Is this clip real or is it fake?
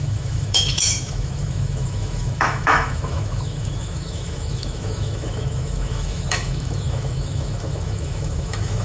fake